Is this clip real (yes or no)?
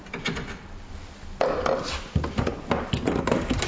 yes